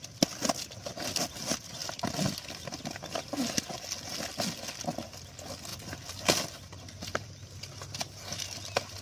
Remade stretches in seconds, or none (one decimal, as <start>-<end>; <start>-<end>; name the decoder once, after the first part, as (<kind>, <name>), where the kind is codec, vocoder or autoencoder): none